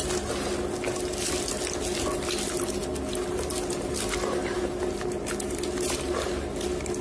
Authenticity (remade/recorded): recorded